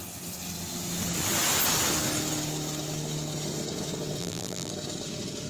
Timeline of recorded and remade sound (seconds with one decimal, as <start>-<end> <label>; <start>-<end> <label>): 0.0-4.2 recorded; 4.2-4.7 remade; 4.7-5.5 recorded